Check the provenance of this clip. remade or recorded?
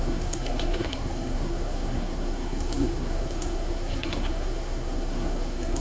remade